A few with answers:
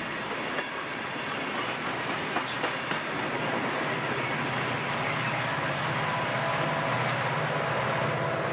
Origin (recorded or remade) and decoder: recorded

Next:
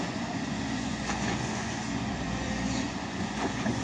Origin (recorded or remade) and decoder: remade, vocoder, Vocos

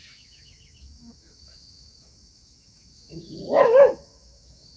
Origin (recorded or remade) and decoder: remade, autoencoder, DAC-VAE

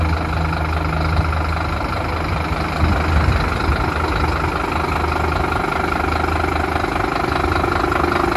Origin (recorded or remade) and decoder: recorded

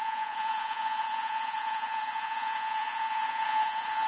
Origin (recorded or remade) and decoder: remade, vocoder, Vocos